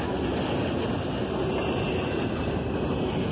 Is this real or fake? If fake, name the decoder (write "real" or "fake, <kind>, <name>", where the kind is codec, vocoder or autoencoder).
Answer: real